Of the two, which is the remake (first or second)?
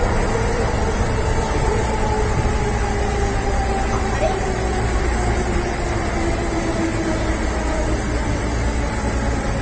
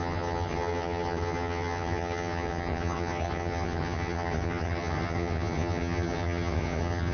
second